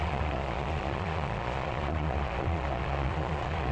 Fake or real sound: fake